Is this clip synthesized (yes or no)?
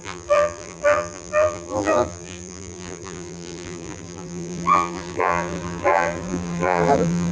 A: yes